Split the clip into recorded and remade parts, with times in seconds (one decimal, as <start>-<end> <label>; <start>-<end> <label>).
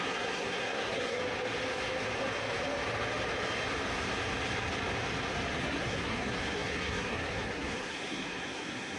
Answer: 0.0-1.2 remade; 1.2-5.6 recorded; 5.6-9.0 remade